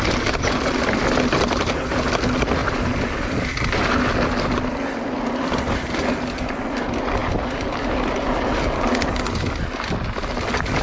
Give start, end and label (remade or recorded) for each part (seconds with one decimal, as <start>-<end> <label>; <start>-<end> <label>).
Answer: 0.0-10.8 recorded